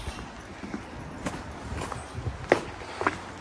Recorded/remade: recorded